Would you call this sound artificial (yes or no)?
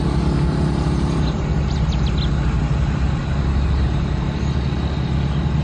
no